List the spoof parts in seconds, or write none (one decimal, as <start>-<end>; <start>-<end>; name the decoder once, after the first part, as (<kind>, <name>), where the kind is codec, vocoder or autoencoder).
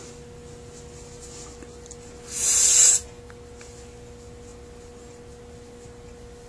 none